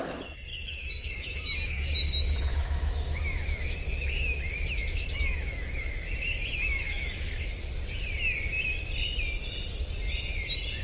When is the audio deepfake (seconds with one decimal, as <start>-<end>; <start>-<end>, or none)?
0.5-1.9; 2.5-7.4